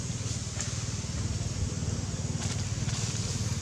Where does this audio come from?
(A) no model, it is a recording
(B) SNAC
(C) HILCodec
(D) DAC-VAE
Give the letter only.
A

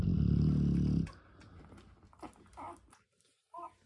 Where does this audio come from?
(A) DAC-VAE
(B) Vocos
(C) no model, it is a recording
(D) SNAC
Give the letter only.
C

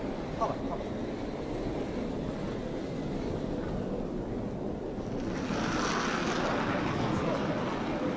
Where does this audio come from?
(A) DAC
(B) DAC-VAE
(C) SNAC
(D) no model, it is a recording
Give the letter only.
D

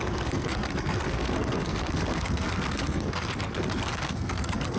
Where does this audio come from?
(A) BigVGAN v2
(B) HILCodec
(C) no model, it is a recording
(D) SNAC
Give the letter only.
D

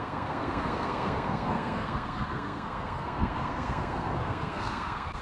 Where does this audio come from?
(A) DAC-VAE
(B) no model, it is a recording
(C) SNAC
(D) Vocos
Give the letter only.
C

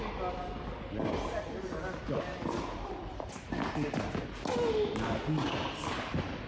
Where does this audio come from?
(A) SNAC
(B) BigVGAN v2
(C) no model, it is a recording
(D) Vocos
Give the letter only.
C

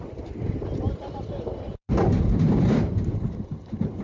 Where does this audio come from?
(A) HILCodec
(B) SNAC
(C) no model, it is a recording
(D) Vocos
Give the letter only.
C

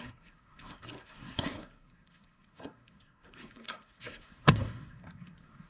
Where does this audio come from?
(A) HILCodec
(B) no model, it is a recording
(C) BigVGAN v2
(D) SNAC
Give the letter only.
D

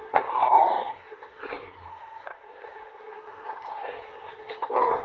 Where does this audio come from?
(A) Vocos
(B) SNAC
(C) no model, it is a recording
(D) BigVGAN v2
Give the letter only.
B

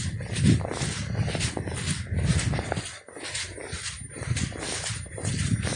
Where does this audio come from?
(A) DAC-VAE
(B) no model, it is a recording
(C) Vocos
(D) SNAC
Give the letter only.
B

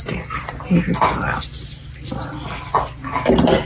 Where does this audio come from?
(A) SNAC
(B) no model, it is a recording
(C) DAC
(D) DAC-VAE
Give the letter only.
B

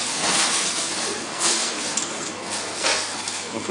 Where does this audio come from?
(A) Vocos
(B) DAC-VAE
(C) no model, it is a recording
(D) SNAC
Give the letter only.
D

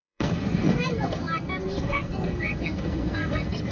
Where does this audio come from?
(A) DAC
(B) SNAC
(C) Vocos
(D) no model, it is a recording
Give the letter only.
B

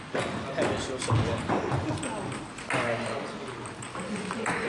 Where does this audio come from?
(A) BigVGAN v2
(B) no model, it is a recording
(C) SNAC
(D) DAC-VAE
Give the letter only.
B